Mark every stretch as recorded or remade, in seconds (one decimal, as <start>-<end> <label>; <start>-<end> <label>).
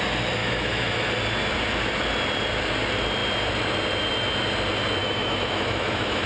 0.0-0.4 recorded; 0.4-1.1 remade; 1.1-5.0 recorded; 5.0-6.3 remade